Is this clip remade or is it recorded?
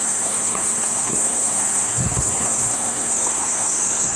remade